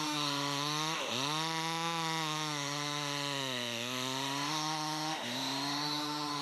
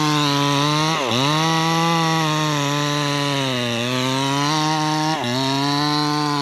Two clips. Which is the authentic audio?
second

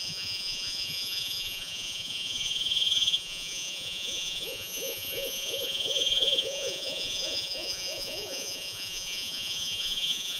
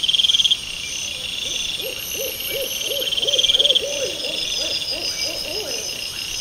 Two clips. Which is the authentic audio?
second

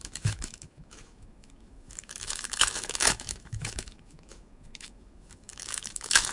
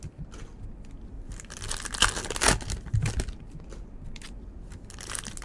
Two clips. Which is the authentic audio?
second